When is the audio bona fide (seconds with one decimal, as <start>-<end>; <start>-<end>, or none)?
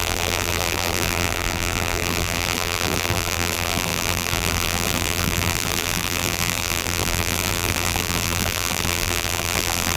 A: none